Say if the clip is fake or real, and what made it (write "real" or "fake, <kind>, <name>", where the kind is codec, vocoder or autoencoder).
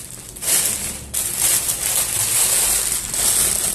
real